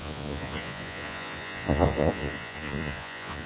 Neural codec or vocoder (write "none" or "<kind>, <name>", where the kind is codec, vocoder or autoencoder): vocoder, Vocos